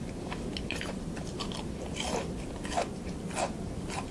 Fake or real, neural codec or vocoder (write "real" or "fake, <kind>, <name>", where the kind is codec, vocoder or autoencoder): fake, vocoder, BigVGAN v2